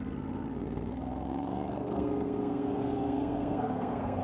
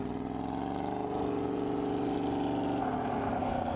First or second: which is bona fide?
second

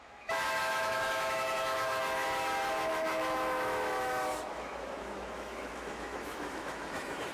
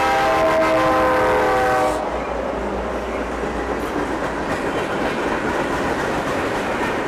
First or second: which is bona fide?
second